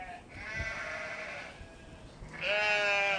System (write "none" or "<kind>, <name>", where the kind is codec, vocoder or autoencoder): none